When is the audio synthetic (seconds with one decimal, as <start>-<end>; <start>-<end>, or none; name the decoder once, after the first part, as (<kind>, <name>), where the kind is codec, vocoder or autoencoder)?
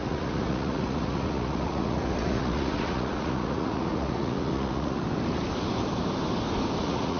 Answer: 0.0-5.0 (vocoder, Vocos); 6.8-7.2